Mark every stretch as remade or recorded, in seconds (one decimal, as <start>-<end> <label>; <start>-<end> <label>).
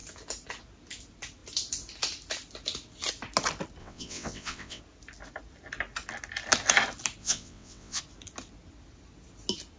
0.0-3.8 recorded; 3.8-4.8 remade; 4.8-7.2 recorded; 7.2-8.0 remade; 8.0-9.8 recorded